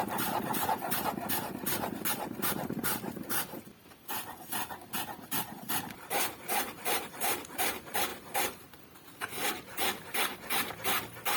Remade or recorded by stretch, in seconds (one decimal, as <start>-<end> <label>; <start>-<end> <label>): 0.0-11.4 remade